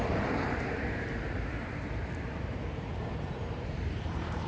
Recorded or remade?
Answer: remade